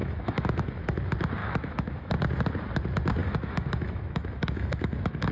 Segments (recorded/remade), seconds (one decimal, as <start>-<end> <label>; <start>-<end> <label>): 0.0-0.8 remade; 0.8-1.4 recorded; 1.4-2.1 remade; 2.1-3.2 recorded; 3.2-5.3 remade